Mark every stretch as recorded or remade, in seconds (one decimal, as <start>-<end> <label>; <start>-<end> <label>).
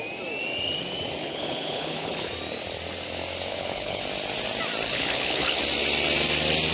0.0-1.2 recorded; 1.2-2.3 remade; 2.3-3.5 recorded; 3.5-4.0 remade; 4.0-4.9 recorded; 4.9-5.6 remade; 5.6-6.7 recorded